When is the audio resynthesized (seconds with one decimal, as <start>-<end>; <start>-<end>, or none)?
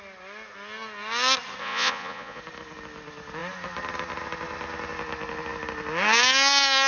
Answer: 1.6-2.4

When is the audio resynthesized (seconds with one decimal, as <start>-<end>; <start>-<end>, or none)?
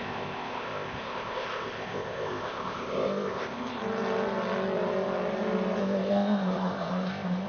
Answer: 0.0-3.8; 5.8-7.5